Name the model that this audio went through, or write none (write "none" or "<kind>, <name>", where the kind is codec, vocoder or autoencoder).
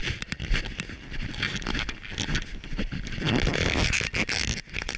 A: none